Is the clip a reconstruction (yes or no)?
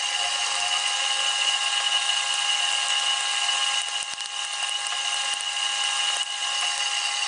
no